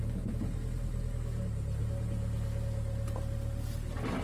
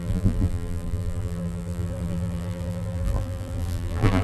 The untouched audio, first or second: first